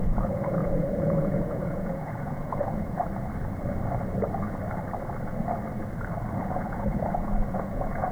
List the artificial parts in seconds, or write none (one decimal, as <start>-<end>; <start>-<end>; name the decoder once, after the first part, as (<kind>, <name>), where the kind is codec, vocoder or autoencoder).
0.0-3.0 (vocoder, Vocos); 6.4-8.1